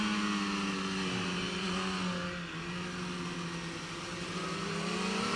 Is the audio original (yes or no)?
yes